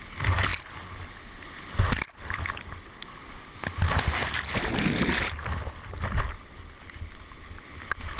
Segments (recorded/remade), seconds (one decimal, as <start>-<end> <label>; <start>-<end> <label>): 0.0-8.2 recorded